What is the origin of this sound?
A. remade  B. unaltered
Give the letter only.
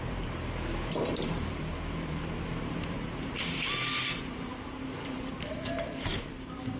A